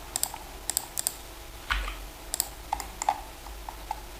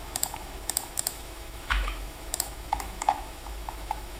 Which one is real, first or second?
first